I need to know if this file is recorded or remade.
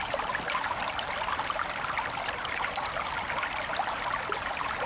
recorded